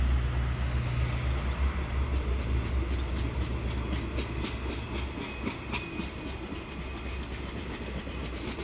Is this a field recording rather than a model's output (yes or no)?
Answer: yes